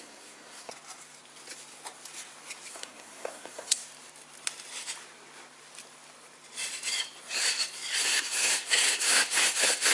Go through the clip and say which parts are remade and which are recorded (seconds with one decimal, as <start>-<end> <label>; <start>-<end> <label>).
0.0-0.7 remade; 0.7-2.7 recorded; 2.7-3.8 remade; 3.8-8.0 recorded; 8.0-9.9 remade